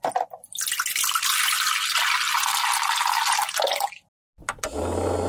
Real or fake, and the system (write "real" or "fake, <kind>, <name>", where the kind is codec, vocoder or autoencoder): real